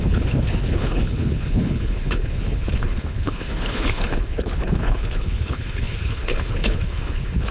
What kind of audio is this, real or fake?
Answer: fake